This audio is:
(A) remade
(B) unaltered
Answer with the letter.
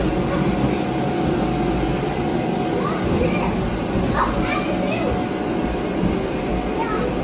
B